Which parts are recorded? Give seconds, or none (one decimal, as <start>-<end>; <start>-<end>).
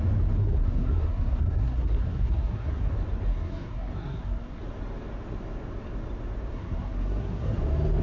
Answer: 0.0-0.4; 2.9-3.3; 4.6-6.5; 7.6-8.0